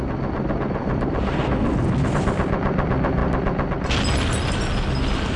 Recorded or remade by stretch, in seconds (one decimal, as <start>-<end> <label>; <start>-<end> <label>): 0.0-0.8 recorded; 0.8-1.5 remade; 1.5-5.4 recorded